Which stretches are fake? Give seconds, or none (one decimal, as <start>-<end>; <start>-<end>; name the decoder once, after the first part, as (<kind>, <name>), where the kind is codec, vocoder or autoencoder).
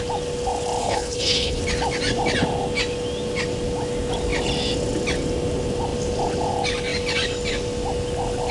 0.8-1.6 (codec, HILCodec)